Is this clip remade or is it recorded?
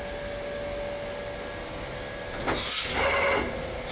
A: recorded